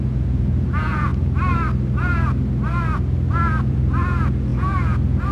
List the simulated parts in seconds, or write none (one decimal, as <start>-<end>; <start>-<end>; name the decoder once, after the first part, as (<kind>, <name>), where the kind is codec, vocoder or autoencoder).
0.0-1.1 (vocoder, Vocos); 3.3-5.3